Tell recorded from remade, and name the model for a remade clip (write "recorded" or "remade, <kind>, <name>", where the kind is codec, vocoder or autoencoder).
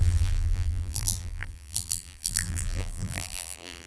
remade, vocoder, BigVGAN v2